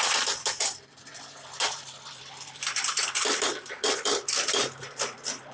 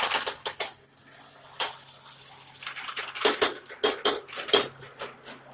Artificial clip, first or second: first